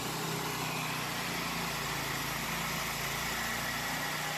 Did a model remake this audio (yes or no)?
no